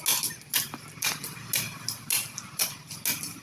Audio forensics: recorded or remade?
recorded